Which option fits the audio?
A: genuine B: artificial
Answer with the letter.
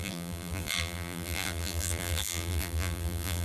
B